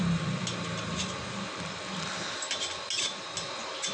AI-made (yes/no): no